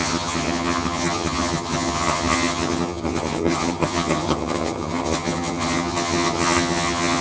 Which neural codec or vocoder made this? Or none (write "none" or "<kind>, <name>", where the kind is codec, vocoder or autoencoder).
vocoder, HiFi-GAN